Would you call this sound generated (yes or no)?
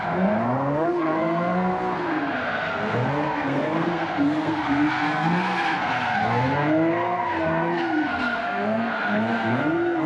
yes